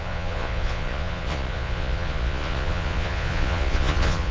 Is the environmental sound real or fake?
fake